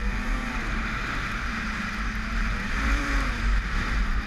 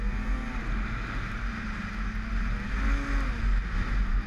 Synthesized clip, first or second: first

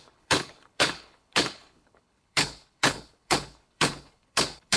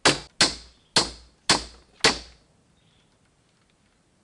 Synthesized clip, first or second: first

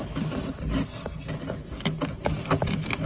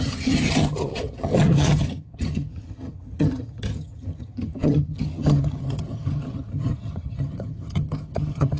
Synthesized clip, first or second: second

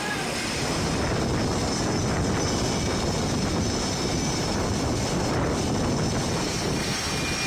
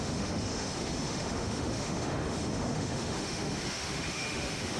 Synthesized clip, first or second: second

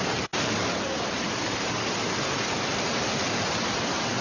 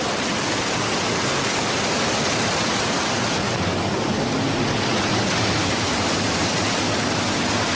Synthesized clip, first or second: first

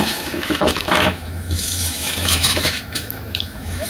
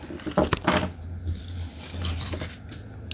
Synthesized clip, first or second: first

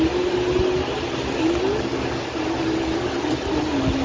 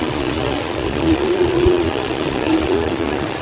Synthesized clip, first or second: second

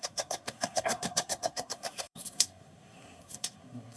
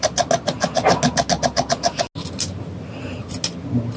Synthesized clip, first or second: first